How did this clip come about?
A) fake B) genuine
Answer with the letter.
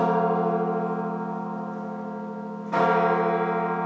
B